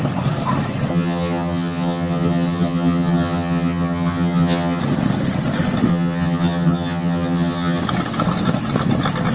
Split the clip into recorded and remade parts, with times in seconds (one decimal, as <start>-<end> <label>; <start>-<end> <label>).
0.0-0.9 recorded; 0.9-4.8 remade; 4.8-5.9 recorded; 5.9-7.8 remade; 7.8-9.3 recorded